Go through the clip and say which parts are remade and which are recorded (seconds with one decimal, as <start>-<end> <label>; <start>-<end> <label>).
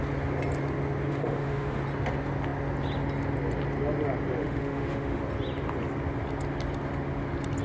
0.0-1.1 recorded; 1.1-1.8 remade; 1.8-4.4 recorded; 4.4-5.2 remade; 5.2-7.6 recorded